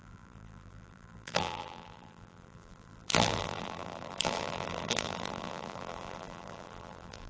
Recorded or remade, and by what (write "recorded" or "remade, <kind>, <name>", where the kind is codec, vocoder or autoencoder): remade, vocoder, BigVGAN v2